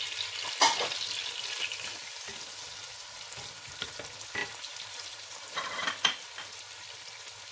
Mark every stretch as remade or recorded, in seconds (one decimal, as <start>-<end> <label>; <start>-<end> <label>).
0.0-4.4 recorded; 4.4-5.9 remade; 5.9-7.5 recorded